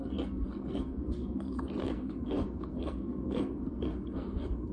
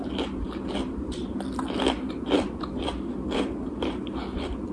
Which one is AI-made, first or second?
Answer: first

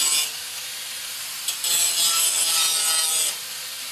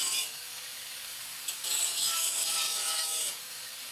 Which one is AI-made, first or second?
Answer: second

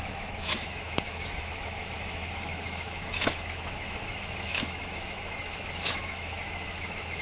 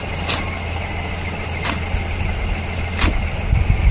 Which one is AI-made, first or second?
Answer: first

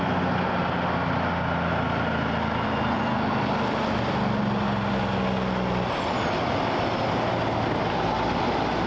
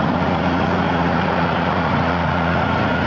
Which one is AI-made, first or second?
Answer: second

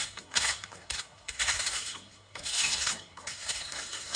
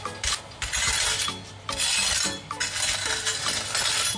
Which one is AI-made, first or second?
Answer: first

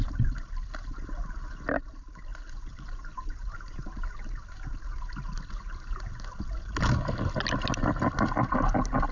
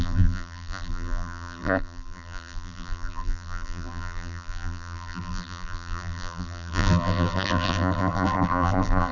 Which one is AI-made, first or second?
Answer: second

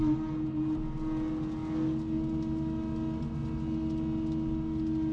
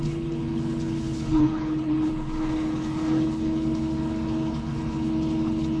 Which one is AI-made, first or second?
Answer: second